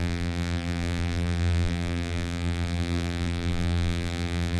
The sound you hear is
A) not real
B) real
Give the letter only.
A